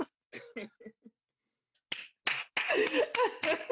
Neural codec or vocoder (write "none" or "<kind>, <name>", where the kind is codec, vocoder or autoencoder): none